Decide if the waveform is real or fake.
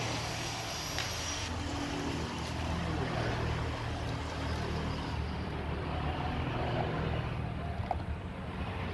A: real